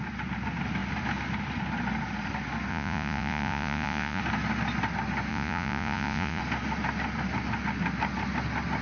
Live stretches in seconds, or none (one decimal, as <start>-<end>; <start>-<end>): 0.0-2.7; 4.2-5.3; 6.4-8.8